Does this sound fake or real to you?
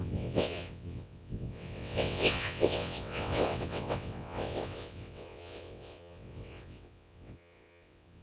fake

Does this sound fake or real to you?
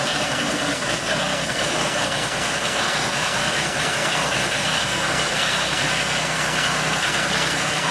fake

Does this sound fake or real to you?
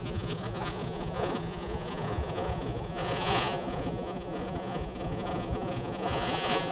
fake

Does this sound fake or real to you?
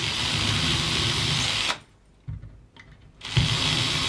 real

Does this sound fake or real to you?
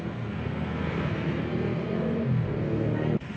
fake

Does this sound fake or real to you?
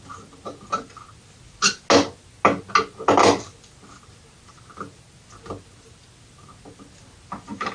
real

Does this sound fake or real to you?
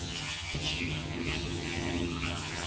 fake